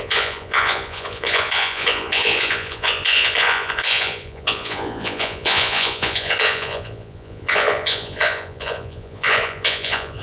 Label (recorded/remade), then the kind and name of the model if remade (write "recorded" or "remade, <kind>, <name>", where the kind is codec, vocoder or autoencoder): remade, vocoder, Vocos